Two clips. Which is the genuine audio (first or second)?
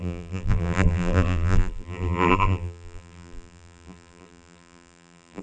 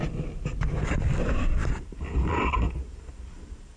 second